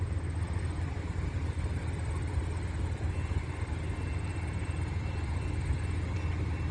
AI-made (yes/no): no